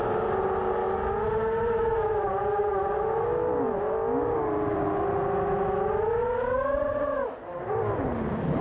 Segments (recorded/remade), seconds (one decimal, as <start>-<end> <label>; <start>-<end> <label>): 0.0-8.6 recorded